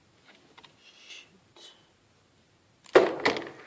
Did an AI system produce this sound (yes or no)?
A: no